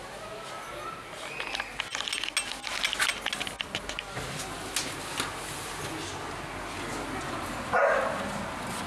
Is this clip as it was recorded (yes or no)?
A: yes